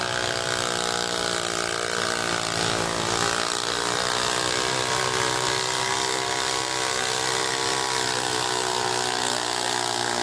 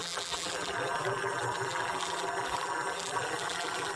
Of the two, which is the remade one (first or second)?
second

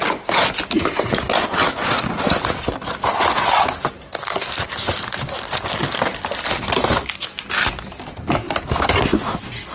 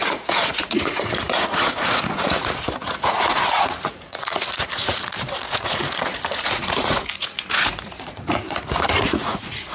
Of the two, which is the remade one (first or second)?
second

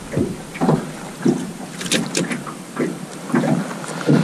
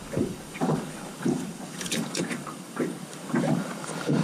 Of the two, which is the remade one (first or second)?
second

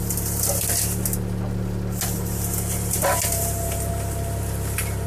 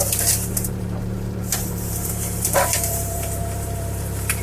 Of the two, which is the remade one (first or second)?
second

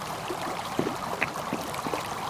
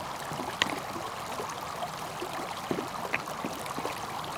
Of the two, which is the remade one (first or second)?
first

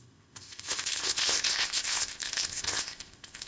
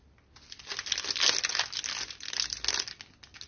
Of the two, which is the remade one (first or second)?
first